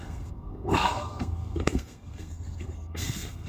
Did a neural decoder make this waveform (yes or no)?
yes